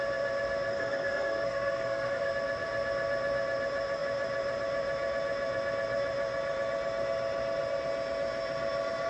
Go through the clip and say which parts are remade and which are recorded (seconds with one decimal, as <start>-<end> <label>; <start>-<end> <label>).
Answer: 0.0-0.7 recorded; 0.7-2.3 remade; 2.3-9.1 recorded